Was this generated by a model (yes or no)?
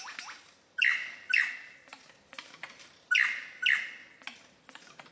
no